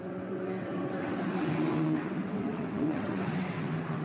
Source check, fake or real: fake